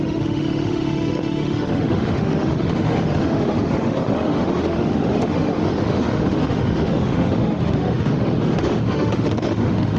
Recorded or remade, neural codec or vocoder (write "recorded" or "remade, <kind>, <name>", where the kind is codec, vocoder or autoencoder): remade, autoencoder, DAC-VAE